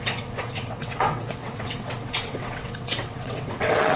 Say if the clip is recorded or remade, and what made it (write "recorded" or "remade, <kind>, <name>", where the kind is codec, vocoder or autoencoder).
remade, vocoder, WaveNeXt